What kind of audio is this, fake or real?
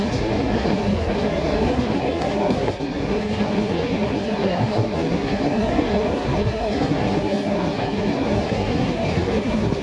fake